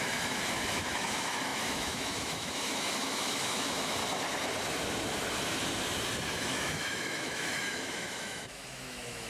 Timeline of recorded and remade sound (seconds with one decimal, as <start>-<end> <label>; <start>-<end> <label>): 0.0-4.0 remade; 4.0-6.5 recorded; 6.5-9.3 remade